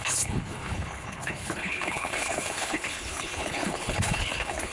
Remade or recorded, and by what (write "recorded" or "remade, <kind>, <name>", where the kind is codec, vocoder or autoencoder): remade, codec, HILCodec